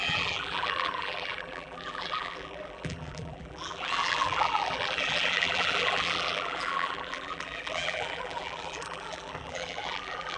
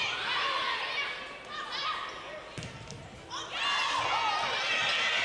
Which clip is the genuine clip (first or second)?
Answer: second